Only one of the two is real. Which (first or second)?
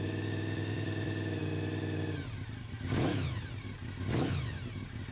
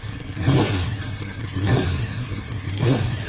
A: first